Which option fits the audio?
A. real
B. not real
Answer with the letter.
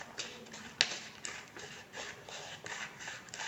A